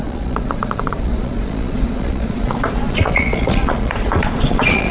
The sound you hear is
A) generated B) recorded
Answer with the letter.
A